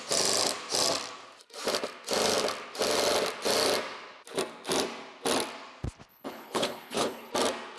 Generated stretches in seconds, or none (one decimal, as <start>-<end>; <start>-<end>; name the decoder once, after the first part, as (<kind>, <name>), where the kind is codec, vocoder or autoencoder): 6.1-7.3 (codec, HILCodec)